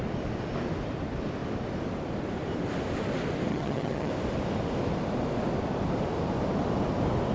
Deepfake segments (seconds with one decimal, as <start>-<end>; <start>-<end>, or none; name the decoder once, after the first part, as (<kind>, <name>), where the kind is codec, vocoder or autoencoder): 3.5-4.1 (vocoder, HiFi-GAN)